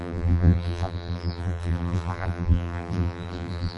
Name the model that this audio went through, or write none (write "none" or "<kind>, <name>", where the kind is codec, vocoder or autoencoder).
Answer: vocoder, BigVGAN v2